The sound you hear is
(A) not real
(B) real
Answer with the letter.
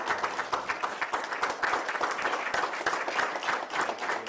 B